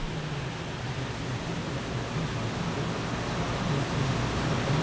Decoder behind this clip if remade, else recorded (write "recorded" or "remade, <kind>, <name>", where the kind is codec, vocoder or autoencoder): recorded